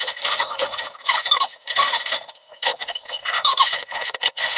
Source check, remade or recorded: remade